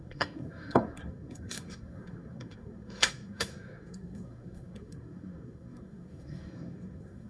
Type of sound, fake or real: fake